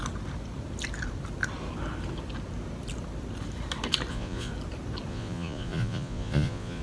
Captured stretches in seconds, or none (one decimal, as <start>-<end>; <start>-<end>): 0.0-4.1; 4.5-5.1